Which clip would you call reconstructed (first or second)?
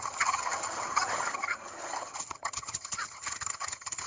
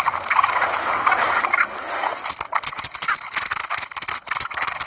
first